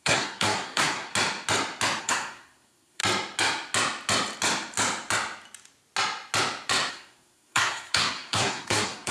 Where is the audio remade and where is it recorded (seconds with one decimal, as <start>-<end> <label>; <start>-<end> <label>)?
0.0-1.1 remade; 1.1-2.0 recorded; 2.0-3.0 remade; 3.0-6.9 recorded; 6.9-9.1 remade